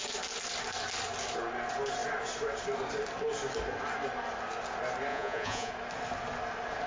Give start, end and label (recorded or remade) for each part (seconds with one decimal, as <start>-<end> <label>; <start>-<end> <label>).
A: 0.0-5.1 recorded; 5.1-5.7 remade; 5.7-6.9 recorded